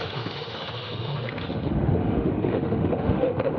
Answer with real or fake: fake